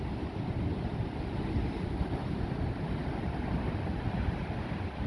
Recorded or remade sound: recorded